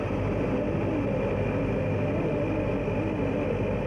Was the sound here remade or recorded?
recorded